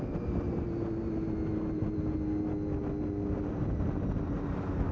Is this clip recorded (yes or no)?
yes